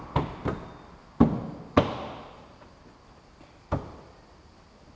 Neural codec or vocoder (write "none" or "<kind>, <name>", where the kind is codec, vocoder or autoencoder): none